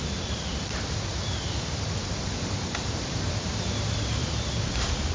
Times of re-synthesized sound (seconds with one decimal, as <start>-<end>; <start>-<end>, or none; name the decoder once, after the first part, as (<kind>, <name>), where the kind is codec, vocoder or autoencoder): 0.0-5.1 (vocoder, BigVGAN v2)